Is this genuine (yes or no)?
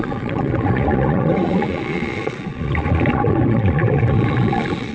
no